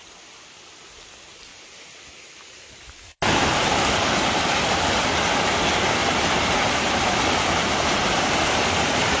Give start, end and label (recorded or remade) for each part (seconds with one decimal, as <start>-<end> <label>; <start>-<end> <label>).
0.0-1.5 recorded; 1.5-4.3 remade; 4.3-6.0 recorded; 6.0-7.0 remade; 7.0-9.2 recorded